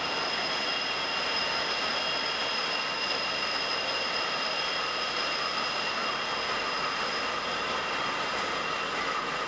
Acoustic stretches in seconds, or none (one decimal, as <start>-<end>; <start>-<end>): 0.0-9.5